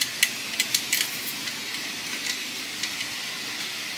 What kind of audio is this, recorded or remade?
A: recorded